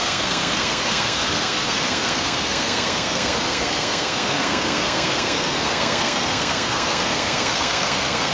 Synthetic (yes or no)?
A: yes